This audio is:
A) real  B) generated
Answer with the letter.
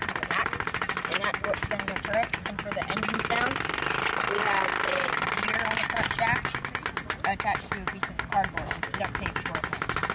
A